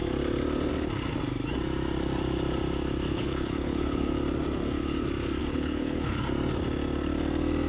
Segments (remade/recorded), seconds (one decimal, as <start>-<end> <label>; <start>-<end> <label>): 0.0-3.1 recorded; 3.1-4.1 remade; 4.1-5.4 recorded; 5.4-6.2 remade; 6.2-7.7 recorded